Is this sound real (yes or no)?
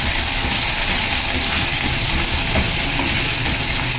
yes